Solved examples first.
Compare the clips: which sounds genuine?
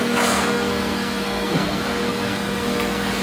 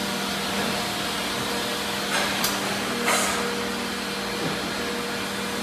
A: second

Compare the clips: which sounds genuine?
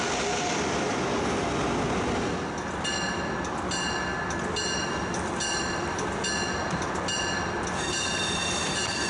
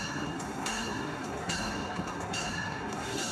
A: first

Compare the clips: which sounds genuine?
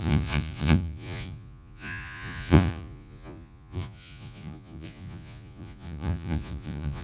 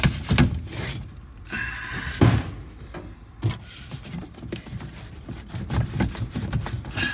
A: second